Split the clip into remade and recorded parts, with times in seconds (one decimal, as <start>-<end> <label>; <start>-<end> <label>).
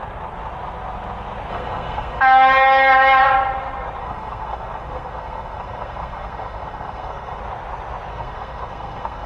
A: 0.0-1.5 recorded; 1.5-2.2 remade; 2.2-4.0 recorded; 4.0-7.4 remade; 7.4-8.1 recorded; 8.1-9.3 remade